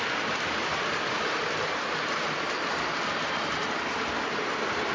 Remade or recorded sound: recorded